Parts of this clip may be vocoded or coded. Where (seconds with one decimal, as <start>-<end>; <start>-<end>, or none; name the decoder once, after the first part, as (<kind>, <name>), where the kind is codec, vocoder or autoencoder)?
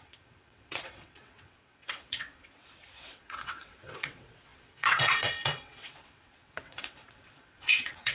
0.0-8.1 (vocoder, WaveNeXt)